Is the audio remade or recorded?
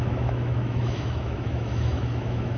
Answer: remade